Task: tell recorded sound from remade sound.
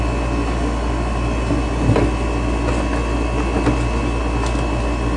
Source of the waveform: recorded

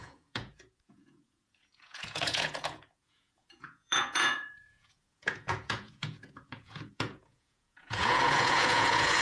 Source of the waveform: remade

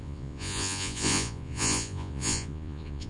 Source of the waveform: remade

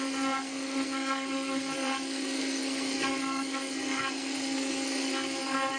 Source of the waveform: remade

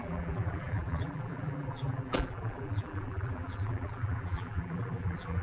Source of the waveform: remade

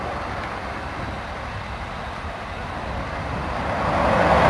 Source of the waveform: recorded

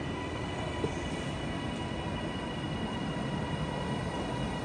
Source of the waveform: recorded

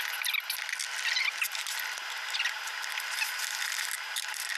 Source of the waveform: recorded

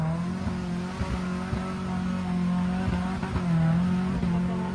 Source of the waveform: recorded